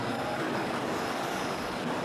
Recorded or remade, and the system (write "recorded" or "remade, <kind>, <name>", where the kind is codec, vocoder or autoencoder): remade, codec, DAC